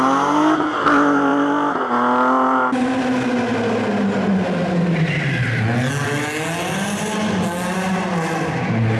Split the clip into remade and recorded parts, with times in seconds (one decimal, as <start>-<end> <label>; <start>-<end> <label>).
0.0-9.0 recorded